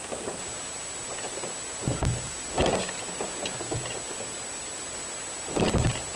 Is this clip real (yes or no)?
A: yes